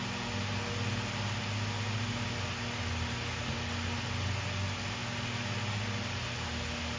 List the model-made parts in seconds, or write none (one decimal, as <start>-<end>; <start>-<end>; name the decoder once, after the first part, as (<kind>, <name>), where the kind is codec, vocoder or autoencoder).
none